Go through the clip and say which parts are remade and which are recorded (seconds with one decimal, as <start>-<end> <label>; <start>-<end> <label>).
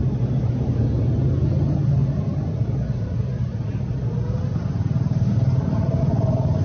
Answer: 0.0-0.7 remade; 0.7-2.0 recorded; 2.0-6.0 remade; 6.0-6.6 recorded